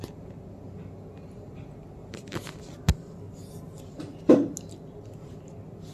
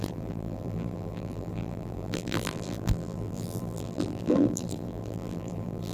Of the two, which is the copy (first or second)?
second